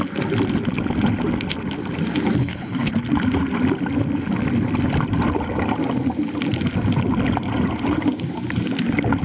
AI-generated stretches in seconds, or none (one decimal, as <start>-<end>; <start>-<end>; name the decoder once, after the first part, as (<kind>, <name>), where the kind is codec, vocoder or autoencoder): 2.4-2.9 (codec, HILCodec)